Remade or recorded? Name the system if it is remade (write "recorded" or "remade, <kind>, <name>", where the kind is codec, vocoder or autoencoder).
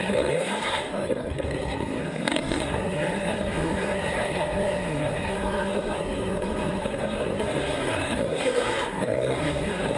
remade, codec, SNAC